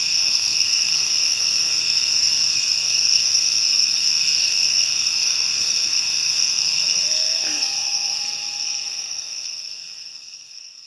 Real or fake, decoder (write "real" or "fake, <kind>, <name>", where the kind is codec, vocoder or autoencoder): fake, codec, SNAC